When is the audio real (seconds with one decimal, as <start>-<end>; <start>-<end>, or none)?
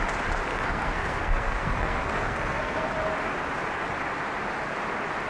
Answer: 0.0-0.5; 2.9-5.3